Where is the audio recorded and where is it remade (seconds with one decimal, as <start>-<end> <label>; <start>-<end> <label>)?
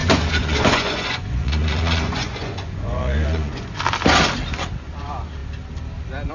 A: 0.0-3.8 remade; 3.8-6.3 recorded